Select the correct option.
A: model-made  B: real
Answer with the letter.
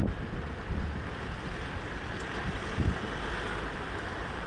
A